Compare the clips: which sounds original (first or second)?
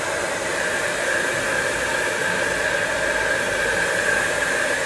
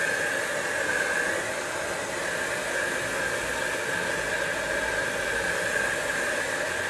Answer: second